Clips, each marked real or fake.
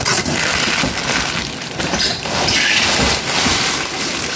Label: real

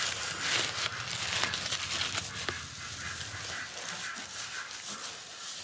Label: real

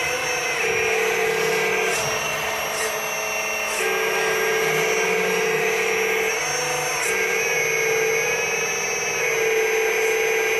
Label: real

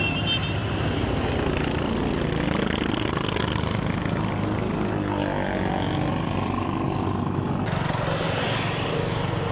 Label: real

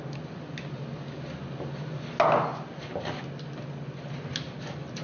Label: real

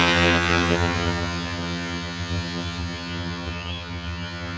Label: fake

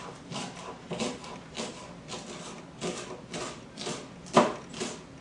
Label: real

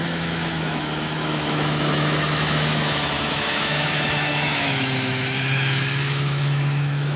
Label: fake